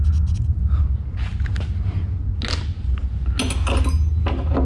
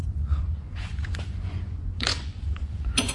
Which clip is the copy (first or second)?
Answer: second